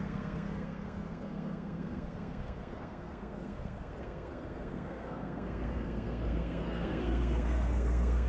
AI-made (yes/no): yes